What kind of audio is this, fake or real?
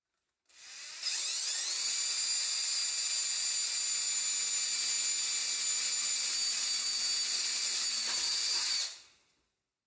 real